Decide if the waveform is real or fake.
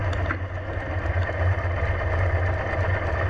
real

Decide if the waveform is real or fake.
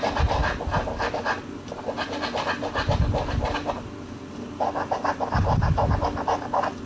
real